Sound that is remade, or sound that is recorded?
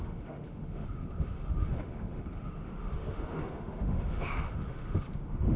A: remade